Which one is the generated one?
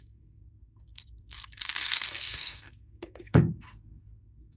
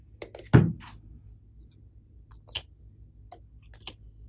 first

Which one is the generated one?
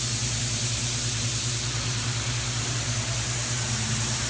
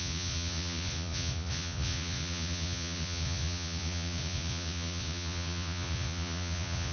second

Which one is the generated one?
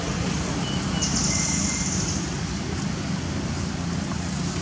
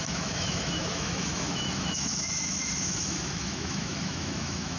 second